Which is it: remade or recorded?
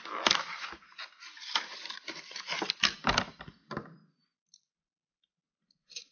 remade